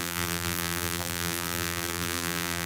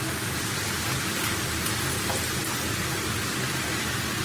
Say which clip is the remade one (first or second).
first